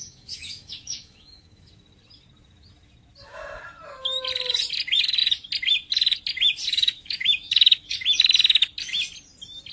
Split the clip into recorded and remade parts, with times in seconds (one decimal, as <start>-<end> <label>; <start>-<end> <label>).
0.0-1.7 remade; 1.7-6.7 recorded; 6.7-8.0 remade; 8.0-9.7 recorded